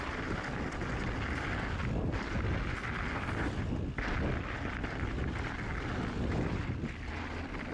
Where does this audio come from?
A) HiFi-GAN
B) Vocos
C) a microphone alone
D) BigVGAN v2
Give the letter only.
C